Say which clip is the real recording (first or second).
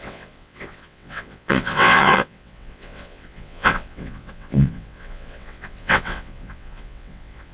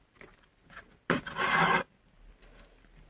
second